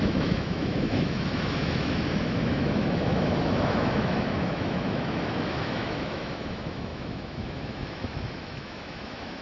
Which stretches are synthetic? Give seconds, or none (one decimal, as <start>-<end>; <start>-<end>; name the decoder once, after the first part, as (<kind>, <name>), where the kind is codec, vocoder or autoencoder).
0.0-9.4 (autoencoder, DAC-VAE)